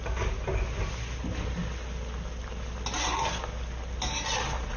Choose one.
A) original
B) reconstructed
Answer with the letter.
A